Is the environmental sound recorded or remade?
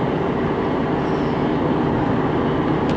recorded